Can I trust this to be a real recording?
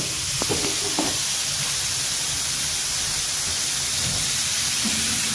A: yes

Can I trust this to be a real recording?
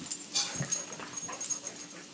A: yes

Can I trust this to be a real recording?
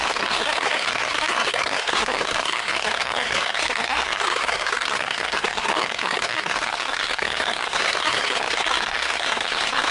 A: no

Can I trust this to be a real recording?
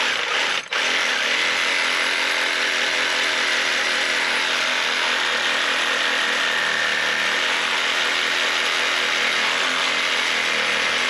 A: yes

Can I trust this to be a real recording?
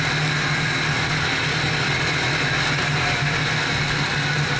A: yes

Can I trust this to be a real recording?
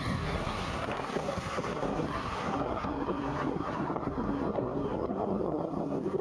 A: no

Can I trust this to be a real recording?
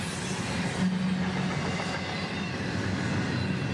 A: yes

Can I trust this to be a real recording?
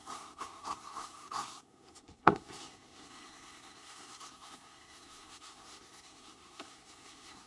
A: no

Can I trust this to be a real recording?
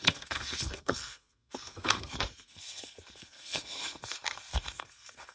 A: no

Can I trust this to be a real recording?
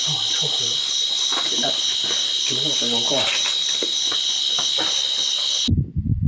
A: yes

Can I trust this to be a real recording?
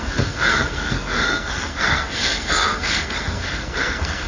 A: no